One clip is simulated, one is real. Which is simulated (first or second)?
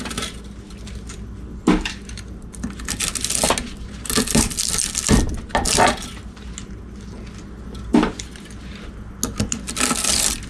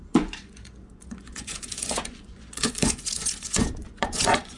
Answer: second